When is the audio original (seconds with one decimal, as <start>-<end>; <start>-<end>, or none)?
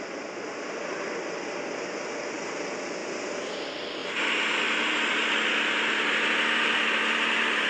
0.0-7.7